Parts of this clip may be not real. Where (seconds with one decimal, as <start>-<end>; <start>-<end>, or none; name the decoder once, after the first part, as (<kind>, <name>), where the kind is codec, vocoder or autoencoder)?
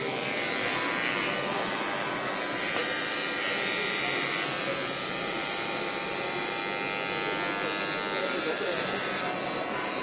0.0-6.6 (vocoder, BigVGAN v2); 8.2-10.0